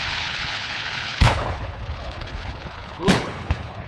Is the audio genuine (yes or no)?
no